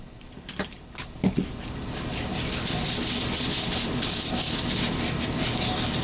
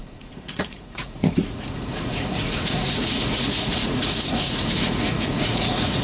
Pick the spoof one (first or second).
second